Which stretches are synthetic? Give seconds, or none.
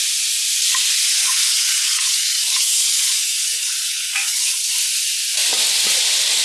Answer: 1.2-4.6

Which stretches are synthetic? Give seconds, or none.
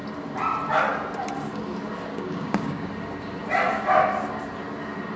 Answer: 2.1-2.9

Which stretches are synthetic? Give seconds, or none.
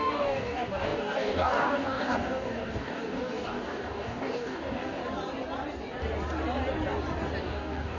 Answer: 0.0-5.0; 7.4-8.0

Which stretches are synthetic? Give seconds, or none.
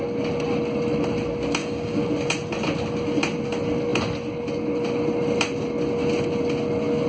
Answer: 1.6-2.1